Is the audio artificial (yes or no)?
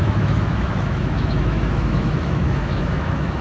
yes